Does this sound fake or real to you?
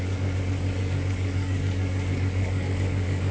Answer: fake